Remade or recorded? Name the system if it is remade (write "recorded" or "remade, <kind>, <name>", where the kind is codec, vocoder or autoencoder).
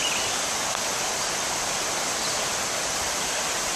recorded